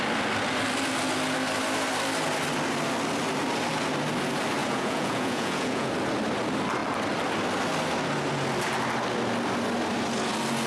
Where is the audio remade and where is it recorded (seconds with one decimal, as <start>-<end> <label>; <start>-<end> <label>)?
0.0-4.6 recorded; 4.6-5.9 remade; 5.9-10.7 recorded